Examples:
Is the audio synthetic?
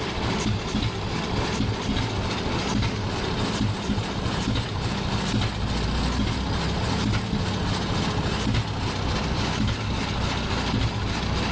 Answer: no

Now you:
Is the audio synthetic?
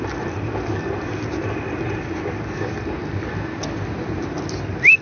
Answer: no